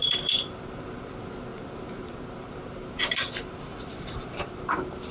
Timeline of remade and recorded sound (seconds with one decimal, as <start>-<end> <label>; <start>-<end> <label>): 0.0-1.1 remade; 1.1-1.5 recorded; 1.5-4.6 remade; 4.6-5.1 recorded